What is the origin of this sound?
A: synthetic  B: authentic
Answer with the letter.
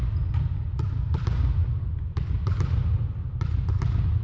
B